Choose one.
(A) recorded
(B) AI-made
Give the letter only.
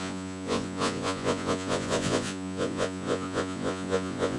B